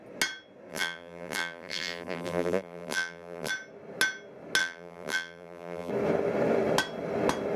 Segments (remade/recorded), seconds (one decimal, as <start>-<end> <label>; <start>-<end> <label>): 0.0-0.7 recorded; 0.7-3.5 remade; 3.5-4.6 recorded; 4.6-5.9 remade; 5.9-7.6 recorded